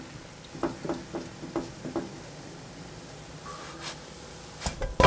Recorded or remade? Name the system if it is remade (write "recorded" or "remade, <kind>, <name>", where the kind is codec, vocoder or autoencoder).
recorded